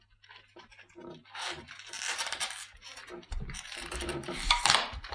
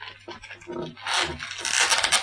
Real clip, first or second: second